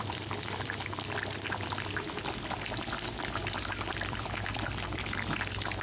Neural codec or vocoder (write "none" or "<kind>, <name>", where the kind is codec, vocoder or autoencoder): vocoder, BigVGAN v2